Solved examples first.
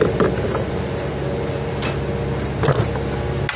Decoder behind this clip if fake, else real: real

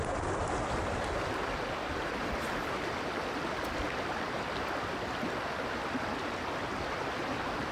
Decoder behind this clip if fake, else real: real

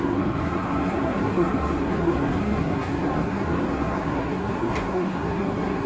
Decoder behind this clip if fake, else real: fake, codec, SNAC